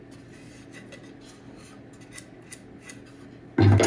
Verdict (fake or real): real